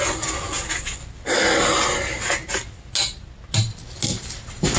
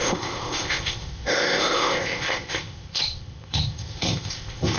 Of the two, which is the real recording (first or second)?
first